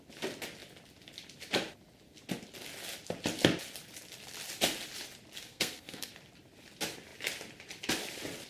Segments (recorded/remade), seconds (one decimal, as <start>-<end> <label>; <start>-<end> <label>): 0.0-5.4 recorded; 5.4-6.1 remade; 6.1-8.5 recorded